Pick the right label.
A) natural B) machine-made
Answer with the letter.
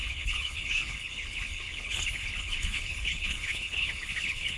B